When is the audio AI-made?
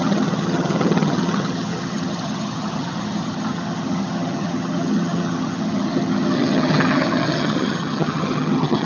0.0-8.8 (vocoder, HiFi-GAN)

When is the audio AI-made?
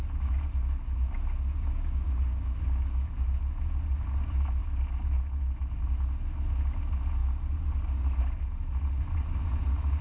none